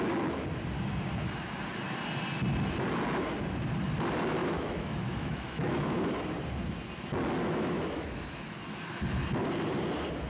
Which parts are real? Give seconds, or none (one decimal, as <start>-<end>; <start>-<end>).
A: 0.0-4.4; 6.1-7.4; 8.6-10.3